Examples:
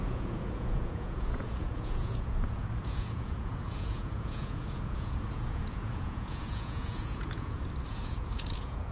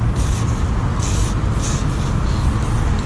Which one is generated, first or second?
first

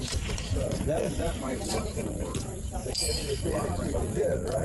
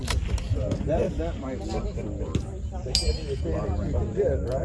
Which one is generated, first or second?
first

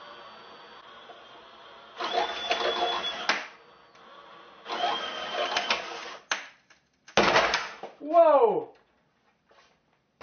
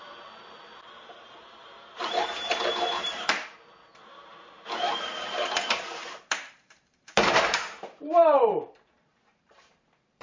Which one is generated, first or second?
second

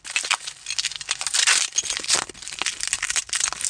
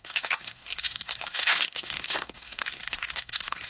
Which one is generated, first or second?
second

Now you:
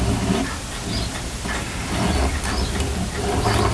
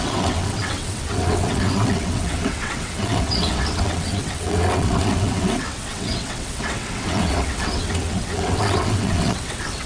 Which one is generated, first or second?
second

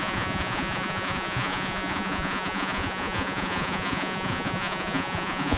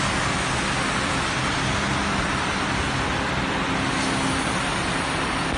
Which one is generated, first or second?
first